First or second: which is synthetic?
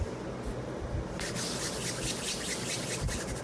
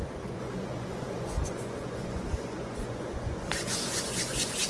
second